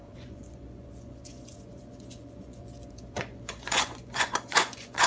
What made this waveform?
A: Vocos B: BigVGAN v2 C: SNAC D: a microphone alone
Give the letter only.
A